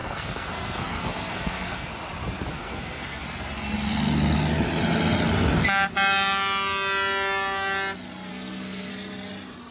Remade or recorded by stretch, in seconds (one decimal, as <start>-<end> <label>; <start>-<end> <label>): 0.0-1.9 remade; 1.9-2.5 recorded; 2.5-3.2 remade; 3.2-8.3 recorded; 8.3-8.9 remade; 8.9-9.7 recorded